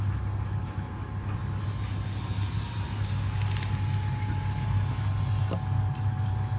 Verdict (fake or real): real